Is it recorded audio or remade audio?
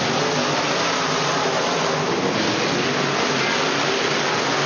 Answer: recorded